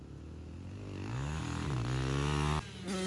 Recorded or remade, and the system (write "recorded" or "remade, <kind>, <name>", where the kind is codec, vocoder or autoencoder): recorded